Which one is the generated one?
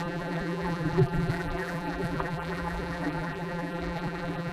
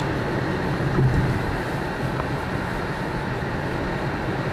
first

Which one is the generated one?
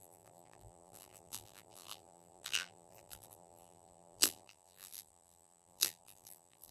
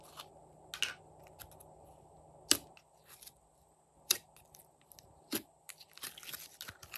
first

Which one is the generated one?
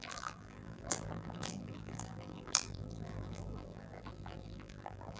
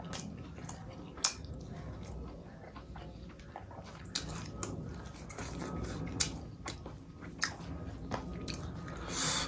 first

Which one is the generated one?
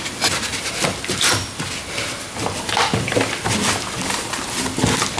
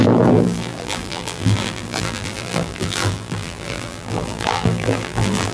second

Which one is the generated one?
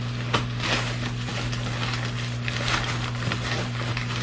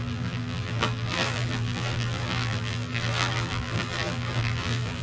second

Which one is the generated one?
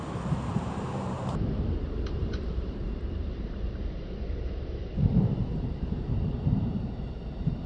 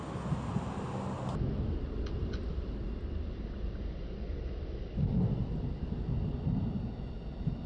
first